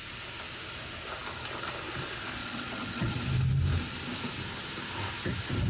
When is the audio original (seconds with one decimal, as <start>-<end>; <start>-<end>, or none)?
0.0-2.4; 3.2-5.7